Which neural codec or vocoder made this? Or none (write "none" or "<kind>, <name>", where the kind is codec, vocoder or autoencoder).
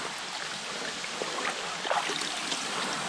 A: none